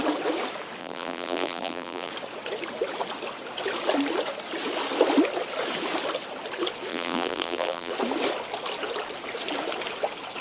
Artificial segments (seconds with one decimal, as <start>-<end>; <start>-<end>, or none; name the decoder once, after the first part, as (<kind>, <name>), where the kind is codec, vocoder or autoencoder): 0.8-2.1 (vocoder, BigVGAN v2); 6.9-7.9